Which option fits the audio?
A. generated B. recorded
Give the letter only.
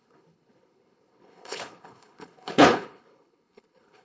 A